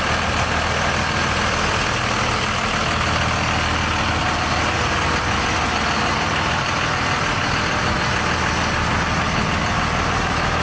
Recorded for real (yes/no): yes